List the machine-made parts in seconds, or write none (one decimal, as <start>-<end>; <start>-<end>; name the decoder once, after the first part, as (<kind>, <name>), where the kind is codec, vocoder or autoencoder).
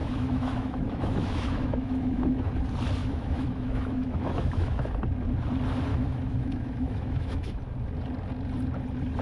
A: 0.0-2.5 (autoencoder, DAC-VAE); 3.0-4.9; 5.9-7.6